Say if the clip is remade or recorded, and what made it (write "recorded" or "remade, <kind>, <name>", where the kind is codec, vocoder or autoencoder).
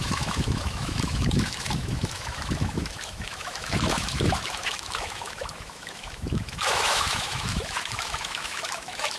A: remade, autoencoder, DAC-VAE